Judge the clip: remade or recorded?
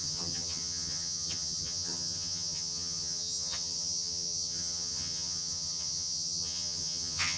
remade